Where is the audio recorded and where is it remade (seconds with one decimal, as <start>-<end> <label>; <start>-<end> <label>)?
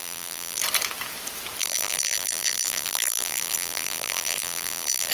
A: 0.0-0.6 remade; 0.6-1.6 recorded; 1.6-5.1 remade